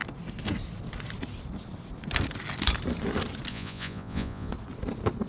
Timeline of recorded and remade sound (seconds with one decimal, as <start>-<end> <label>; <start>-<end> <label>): 0.0-3.5 recorded; 3.5-4.5 remade; 4.5-5.3 recorded